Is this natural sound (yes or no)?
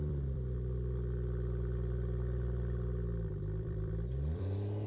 no